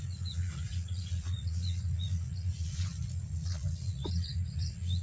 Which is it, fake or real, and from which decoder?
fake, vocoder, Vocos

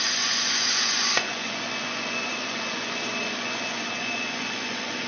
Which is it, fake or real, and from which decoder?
fake, vocoder, Vocos